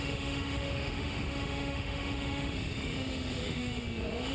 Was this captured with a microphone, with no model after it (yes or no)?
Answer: no